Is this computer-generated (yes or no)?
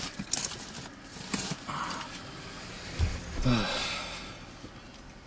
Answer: no